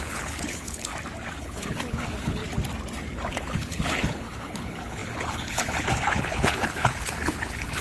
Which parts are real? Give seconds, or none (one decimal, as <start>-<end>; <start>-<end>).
0.9-1.4; 2.4-3.3